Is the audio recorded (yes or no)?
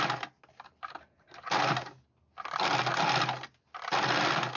yes